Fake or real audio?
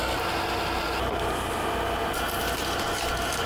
real